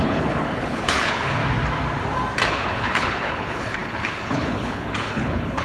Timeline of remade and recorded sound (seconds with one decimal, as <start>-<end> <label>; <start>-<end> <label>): 0.0-1.4 remade; 1.4-2.5 recorded; 2.5-5.6 remade